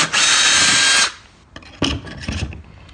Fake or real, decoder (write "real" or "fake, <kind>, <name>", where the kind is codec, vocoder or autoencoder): real